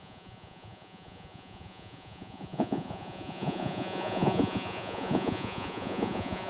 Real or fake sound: fake